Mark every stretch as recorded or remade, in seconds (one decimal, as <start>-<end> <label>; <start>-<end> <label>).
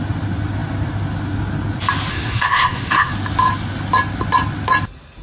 0.0-2.1 recorded; 2.1-3.1 remade; 3.1-5.2 recorded